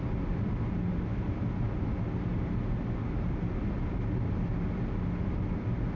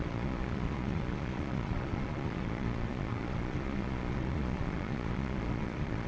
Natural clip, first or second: first